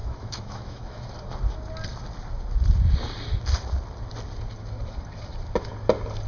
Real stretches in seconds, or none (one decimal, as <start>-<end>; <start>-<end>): 1.1-6.3